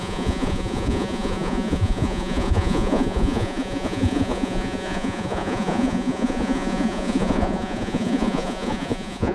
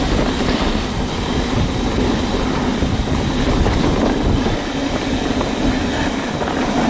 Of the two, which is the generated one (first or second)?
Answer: first